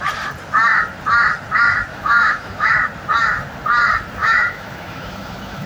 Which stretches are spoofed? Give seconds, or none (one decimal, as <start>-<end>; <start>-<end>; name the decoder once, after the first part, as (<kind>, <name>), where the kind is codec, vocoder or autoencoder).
1.9-2.7 (autoencoder, DAC-VAE); 4.2-5.7